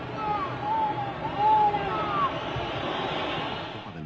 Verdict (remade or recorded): recorded